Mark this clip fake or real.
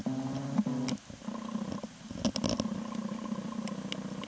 real